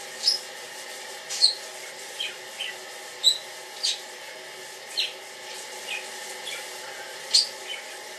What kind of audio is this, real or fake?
real